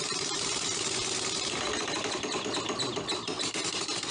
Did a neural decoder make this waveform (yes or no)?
no